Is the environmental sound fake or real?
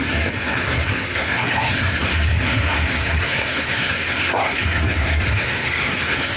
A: fake